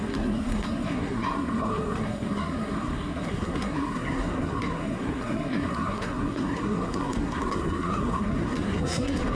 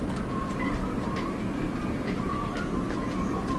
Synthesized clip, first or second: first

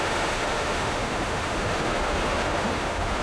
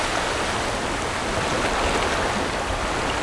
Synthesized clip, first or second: first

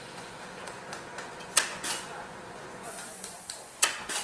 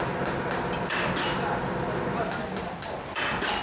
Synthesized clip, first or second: first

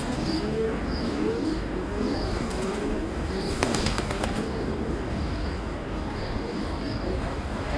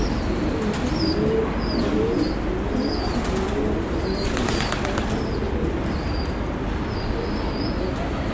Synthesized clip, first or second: first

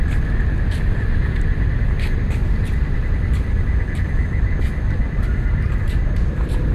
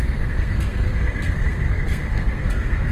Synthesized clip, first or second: second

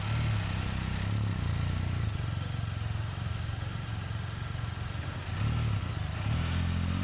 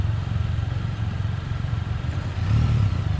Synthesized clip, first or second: second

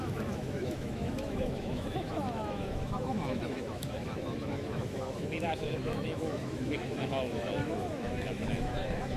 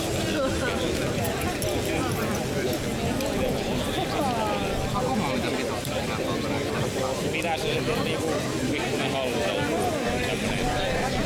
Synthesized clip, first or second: first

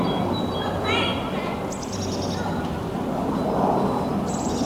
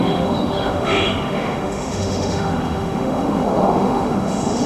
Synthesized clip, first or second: second